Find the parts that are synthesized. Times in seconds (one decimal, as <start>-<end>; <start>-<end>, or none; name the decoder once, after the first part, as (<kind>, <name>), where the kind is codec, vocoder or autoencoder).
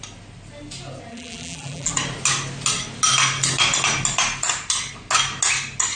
1.1-1.9 (vocoder, BigVGAN v2)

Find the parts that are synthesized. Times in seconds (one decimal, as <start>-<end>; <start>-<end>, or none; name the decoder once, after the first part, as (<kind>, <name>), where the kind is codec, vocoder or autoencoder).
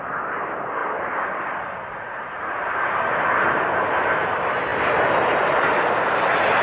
none